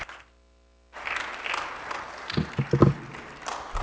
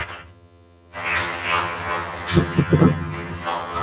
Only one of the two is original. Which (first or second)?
first